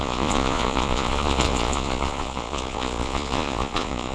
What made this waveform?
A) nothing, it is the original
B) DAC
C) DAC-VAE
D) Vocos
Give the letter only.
D